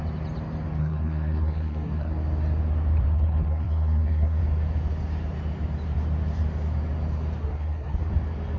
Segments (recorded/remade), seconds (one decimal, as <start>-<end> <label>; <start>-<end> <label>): 0.0-0.8 recorded; 0.8-2.1 remade; 2.1-3.1 recorded; 3.1-4.4 remade; 4.4-7.4 recorded; 7.4-8.0 remade; 8.0-8.6 recorded